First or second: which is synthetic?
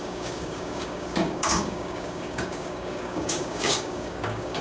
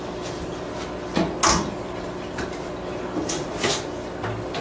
first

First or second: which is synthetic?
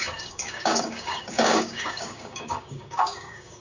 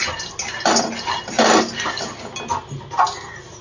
first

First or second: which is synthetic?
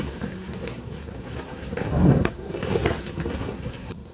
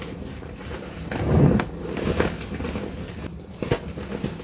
first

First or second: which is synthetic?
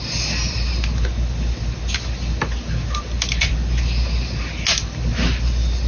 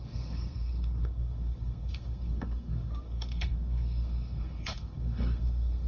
second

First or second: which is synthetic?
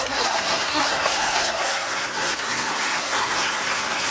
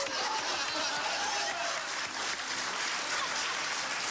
first